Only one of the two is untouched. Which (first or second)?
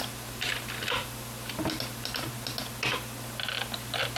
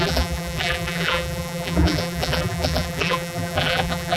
first